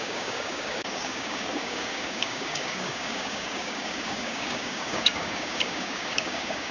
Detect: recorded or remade remade